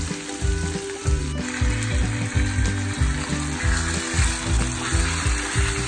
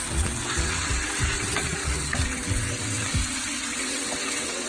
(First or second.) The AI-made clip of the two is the second